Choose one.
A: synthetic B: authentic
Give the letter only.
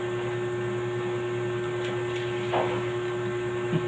B